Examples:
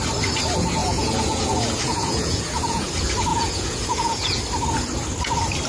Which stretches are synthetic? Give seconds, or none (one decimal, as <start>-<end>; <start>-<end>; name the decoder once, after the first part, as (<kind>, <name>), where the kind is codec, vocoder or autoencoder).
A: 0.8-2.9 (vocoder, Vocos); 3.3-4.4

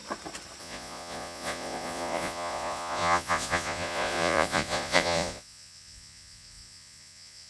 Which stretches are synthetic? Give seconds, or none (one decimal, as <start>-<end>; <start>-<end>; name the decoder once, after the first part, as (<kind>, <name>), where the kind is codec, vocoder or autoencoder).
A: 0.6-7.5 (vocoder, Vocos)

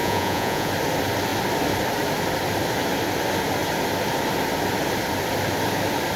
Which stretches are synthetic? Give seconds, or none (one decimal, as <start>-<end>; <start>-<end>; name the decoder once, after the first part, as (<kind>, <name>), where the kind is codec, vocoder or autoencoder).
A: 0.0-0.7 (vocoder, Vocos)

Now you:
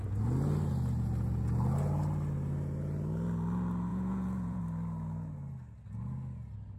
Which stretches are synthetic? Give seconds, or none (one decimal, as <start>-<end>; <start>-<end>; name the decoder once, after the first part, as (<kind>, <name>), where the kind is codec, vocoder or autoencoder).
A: 3.9-4.6 (vocoder, Vocos)